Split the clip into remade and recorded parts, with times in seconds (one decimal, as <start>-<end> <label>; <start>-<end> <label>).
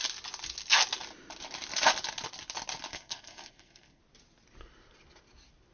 0.0-2.9 recorded; 2.9-4.0 remade; 4.0-5.7 recorded